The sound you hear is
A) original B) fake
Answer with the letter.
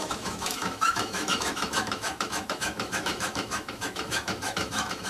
B